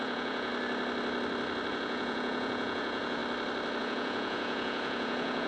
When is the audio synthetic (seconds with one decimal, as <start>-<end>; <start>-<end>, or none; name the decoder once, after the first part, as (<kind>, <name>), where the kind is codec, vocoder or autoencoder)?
0.0-0.5 (vocoder, Vocos); 1.7-3.2; 3.8-5.5